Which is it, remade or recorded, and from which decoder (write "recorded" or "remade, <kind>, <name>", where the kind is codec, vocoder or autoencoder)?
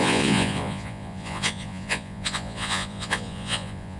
remade, vocoder, Vocos